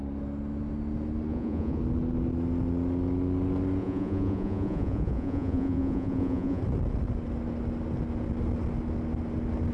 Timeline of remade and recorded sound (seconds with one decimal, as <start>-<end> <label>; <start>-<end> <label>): 0.0-1.3 recorded; 1.3-1.8 remade; 1.8-3.8 recorded; 3.8-6.6 remade; 6.6-9.7 recorded